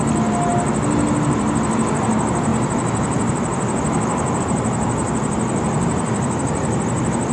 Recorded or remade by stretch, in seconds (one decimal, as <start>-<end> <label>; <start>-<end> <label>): 0.0-2.5 recorded; 2.5-4.4 remade; 4.4-5.0 recorded; 5.0-6.4 remade; 6.4-7.3 recorded